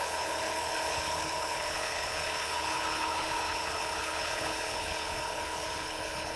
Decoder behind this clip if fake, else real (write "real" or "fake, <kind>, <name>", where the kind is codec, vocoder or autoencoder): fake, codec, HILCodec